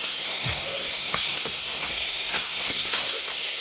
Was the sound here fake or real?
fake